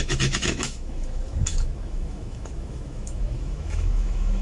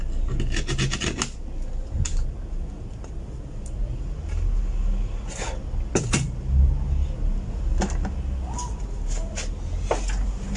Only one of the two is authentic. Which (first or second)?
second